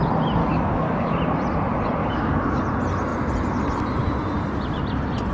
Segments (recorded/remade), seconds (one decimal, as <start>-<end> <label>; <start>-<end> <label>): 0.0-0.4 recorded; 0.4-1.1 remade; 1.1-2.0 recorded; 2.0-2.6 remade; 2.6-5.3 recorded